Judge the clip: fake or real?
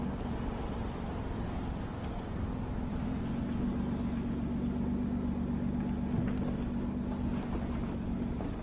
real